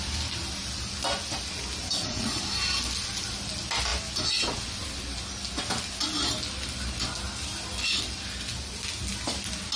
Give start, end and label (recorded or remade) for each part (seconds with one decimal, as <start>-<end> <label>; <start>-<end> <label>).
0.0-1.8 recorded; 1.8-2.4 remade; 2.4-9.8 recorded